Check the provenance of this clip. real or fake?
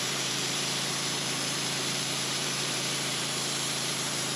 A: fake